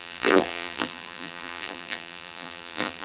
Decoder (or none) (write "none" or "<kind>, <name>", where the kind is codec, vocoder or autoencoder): vocoder, BigVGAN v2